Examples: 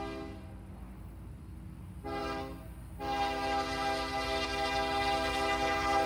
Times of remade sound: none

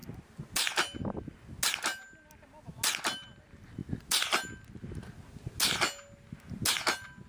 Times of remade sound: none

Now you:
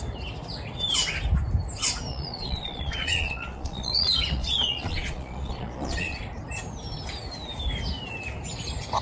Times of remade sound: 2.1-6.2